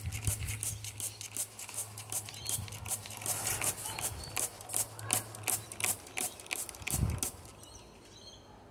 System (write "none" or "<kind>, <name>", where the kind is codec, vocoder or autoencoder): none